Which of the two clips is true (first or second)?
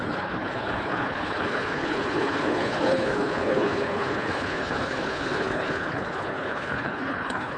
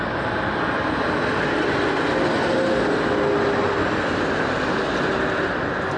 second